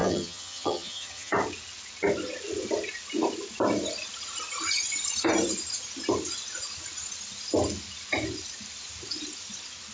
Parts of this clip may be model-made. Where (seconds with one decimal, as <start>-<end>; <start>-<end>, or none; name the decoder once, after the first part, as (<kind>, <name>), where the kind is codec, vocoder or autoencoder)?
0.0-1.3 (vocoder, HiFi-GAN)